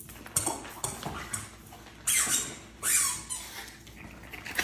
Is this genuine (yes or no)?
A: yes